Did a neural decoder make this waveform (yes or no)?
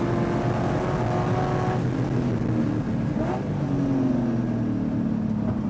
no